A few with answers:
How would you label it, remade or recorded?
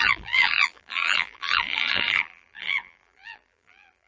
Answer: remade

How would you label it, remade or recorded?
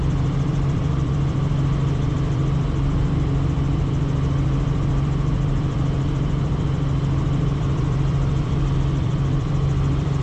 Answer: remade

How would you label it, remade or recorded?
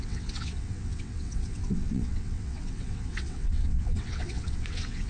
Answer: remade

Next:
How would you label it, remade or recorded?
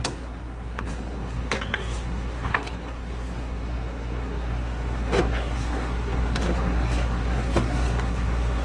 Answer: remade